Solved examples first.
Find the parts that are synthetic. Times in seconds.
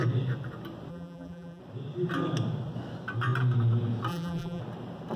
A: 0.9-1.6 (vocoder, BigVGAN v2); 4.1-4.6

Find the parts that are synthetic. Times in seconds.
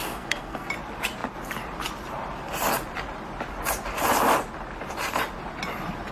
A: 0.0-0.7 (codec, SNAC)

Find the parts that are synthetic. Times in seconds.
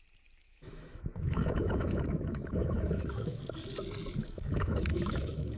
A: 0.4-3.4 (autoencoder, DAC-VAE); 4.2-5.6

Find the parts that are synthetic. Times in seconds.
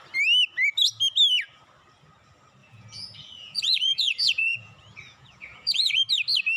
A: 2.6-6.0 (vocoder, Vocos)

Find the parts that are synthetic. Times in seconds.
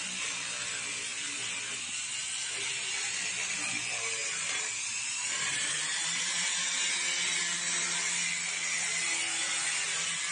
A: 4.2-6.5 (vocoder, BigVGAN v2)